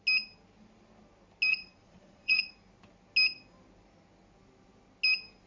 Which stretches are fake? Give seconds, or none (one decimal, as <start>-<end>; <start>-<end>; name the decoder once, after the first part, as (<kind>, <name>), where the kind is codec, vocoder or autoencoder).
1.5-2.5 (vocoder, Vocos)